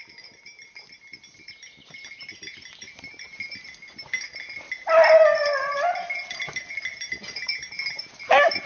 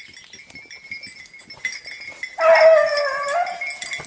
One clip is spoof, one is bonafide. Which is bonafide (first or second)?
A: second